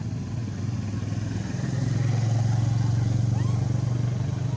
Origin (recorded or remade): recorded